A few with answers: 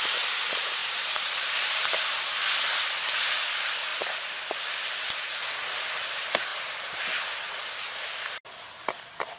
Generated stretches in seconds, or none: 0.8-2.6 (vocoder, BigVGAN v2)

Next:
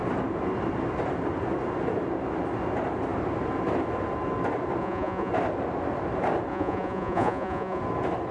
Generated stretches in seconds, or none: 4.8-5.3 (vocoder, Vocos); 6.5-7.8

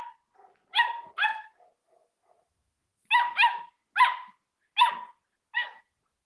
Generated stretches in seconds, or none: 1.8-3.6 (autoencoder, DAC-VAE)

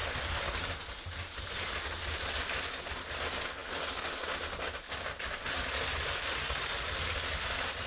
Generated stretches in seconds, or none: none

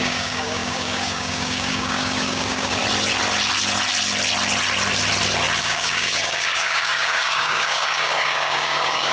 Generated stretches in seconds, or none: 0.0-2.8 (codec, DAC); 5.6-9.1

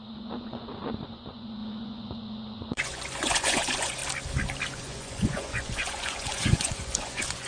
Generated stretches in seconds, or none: 0.0-4.0 (vocoder, Vocos); 4.7-7.5